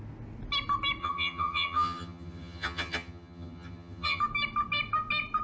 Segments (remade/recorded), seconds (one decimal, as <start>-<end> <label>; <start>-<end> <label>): 0.0-1.0 recorded; 1.0-4.2 remade; 4.2-5.4 recorded